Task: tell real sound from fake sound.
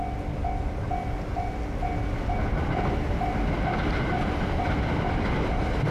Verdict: real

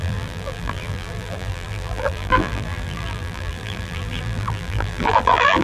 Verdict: fake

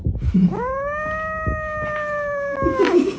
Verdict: real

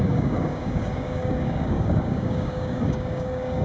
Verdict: fake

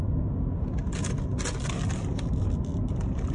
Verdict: real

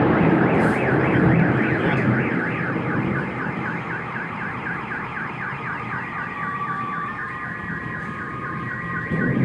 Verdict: fake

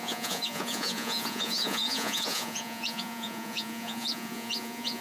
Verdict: fake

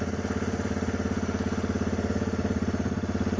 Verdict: real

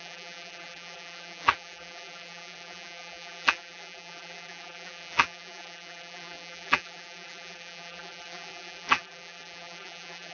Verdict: fake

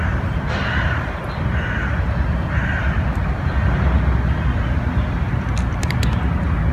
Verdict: real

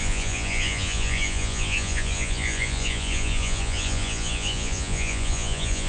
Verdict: fake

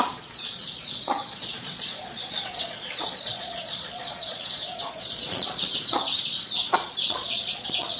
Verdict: fake